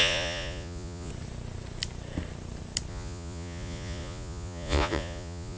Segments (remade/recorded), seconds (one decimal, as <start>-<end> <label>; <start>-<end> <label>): 0.0-1.1 remade; 1.1-2.9 recorded; 2.9-5.6 remade